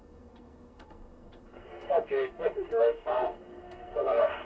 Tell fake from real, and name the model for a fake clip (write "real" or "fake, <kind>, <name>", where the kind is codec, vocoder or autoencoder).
fake, codec, SNAC